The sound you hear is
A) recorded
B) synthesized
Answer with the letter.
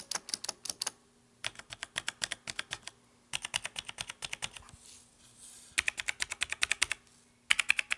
A